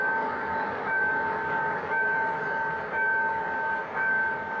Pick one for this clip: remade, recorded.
remade